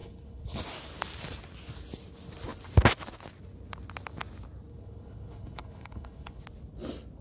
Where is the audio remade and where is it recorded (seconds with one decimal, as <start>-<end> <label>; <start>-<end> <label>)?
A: 0.0-0.6 remade; 0.6-4.7 recorded; 4.7-6.4 remade; 6.4-7.2 recorded

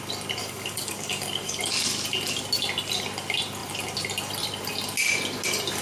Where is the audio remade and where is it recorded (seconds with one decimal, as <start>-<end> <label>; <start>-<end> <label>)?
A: 0.0-0.4 recorded; 0.4-1.6 remade; 1.6-5.8 recorded

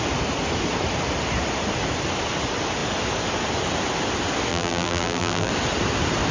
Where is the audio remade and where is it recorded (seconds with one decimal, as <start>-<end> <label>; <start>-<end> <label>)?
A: 0.0-4.5 recorded; 4.5-5.5 remade; 5.5-6.3 recorded

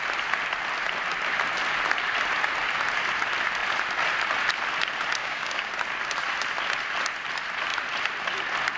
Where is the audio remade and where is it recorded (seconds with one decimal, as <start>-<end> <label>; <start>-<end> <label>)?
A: 0.0-5.2 recorded; 5.2-5.7 remade; 5.7-8.8 recorded

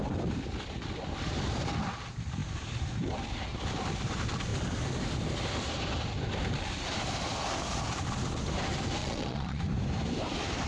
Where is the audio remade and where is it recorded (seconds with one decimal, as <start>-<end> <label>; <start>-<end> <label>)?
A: 0.0-9.0 recorded; 9.0-9.6 remade; 9.6-10.7 recorded

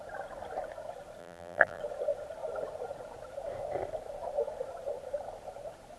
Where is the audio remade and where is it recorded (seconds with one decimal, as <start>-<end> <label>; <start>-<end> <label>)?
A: 0.0-1.2 recorded; 1.2-1.8 remade; 1.8-6.0 recorded